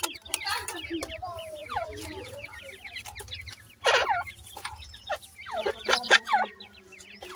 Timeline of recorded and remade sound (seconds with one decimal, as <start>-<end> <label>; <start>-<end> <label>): 0.0-1.6 recorded; 1.6-2.6 remade; 2.6-4.0 recorded; 4.0-6.4 remade; 6.4-7.4 recorded